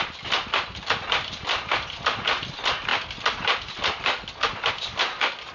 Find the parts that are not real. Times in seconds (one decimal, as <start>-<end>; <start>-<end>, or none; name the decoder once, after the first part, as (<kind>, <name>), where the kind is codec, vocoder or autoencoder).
none